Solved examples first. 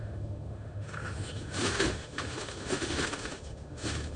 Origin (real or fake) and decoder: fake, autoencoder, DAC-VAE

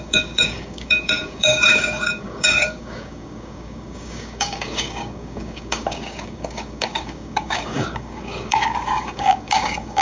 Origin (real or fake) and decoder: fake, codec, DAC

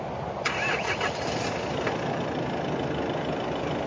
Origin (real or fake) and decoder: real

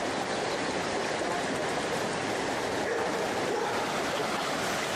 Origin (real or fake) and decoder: real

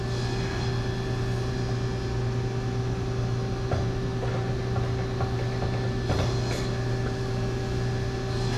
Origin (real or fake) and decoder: real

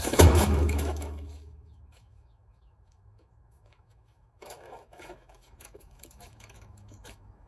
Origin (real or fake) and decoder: fake, autoencoder, DAC-VAE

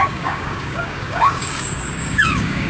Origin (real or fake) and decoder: fake, codec, DAC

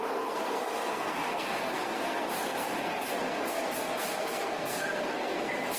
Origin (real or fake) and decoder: fake, codec, SNAC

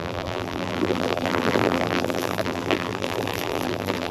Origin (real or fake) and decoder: fake, vocoder, BigVGAN v2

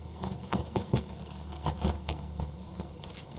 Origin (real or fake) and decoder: fake, codec, SNAC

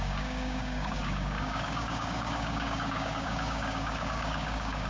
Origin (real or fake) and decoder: fake, codec, DAC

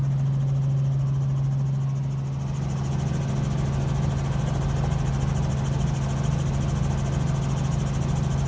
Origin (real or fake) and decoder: real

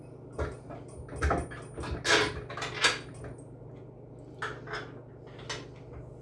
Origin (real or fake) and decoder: real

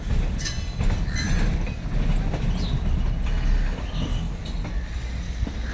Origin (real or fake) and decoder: real